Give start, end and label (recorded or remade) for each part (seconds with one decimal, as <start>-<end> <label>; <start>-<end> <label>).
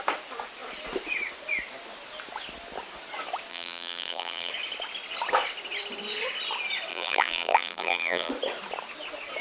0.0-3.5 recorded; 3.5-4.5 remade; 4.5-6.9 recorded; 6.9-8.3 remade; 8.3-9.4 recorded